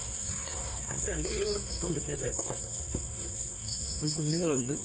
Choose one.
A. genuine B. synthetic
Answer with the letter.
B